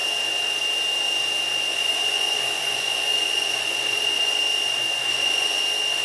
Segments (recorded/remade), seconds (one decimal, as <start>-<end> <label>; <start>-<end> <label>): 0.0-1.7 recorded; 1.7-4.4 remade; 4.4-5.1 recorded; 5.1-5.6 remade; 5.6-6.0 recorded